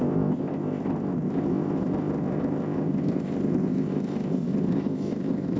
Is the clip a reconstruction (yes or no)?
yes